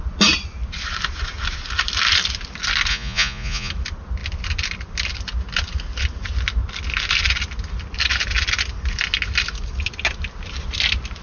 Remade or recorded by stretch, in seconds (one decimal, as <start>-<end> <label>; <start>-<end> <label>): 0.0-2.9 recorded; 2.9-3.7 remade; 3.7-11.2 recorded

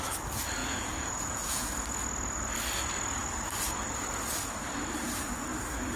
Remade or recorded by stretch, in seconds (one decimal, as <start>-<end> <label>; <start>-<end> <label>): 0.0-0.6 recorded; 0.6-1.7 remade; 1.7-6.0 recorded

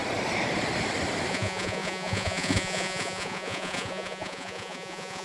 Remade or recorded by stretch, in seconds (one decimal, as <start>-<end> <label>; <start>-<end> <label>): 0.0-1.3 recorded; 1.3-5.2 remade

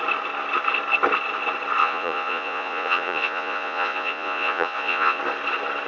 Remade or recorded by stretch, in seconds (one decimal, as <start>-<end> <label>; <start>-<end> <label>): 0.0-1.8 recorded; 1.8-5.2 remade; 5.2-5.9 recorded